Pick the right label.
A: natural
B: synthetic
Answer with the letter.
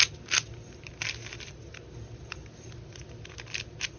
A